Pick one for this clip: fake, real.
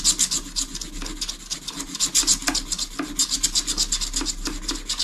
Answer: real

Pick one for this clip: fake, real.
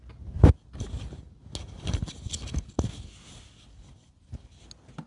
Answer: real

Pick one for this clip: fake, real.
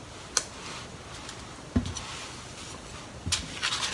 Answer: real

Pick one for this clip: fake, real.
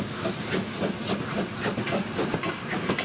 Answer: real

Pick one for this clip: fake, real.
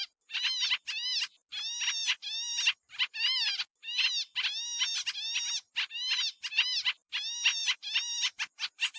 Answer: real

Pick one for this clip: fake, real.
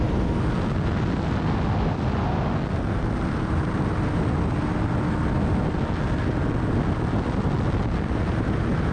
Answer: real